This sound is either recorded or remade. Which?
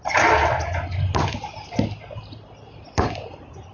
recorded